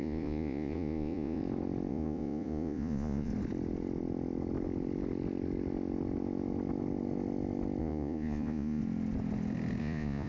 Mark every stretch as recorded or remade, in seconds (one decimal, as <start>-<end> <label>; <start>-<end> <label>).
0.0-1.4 remade; 1.4-1.9 recorded; 1.9-3.3 remade; 3.3-7.8 recorded; 7.8-8.8 remade; 8.8-9.8 recorded; 9.8-10.3 remade